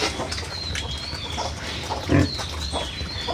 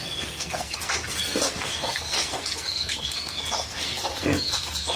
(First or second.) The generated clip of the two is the second